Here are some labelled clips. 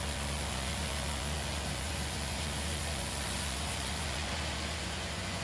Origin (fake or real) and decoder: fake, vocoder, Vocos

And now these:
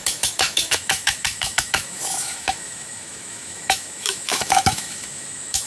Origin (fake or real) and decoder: fake, autoencoder, DAC-VAE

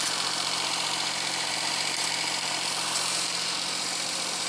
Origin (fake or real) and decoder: fake, vocoder, BigVGAN v2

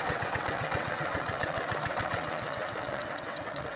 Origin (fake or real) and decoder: fake, vocoder, WaveNeXt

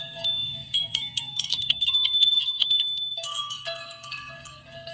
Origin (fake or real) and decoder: fake, codec, SNAC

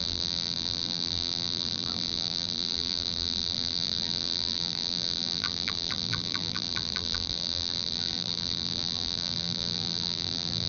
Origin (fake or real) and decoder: fake, vocoder, BigVGAN v2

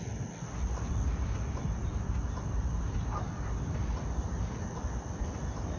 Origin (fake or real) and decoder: real